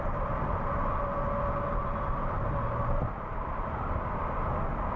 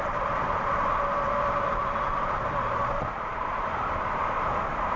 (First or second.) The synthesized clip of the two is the second